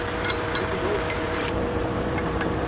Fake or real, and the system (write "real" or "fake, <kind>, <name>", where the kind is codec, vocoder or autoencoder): fake, vocoder, BigVGAN v2